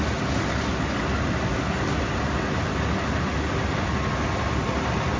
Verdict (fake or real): real